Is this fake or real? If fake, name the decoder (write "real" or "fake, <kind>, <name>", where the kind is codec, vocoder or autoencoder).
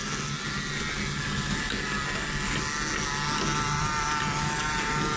real